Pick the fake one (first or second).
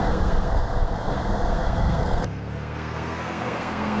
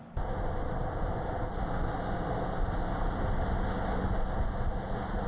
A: first